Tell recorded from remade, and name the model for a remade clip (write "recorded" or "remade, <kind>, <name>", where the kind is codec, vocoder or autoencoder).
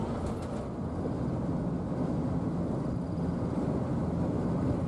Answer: recorded